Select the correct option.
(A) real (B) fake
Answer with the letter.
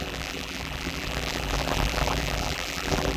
B